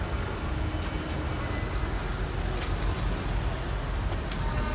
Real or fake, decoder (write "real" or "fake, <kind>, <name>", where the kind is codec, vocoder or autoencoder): real